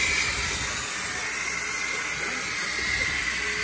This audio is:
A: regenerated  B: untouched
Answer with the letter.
B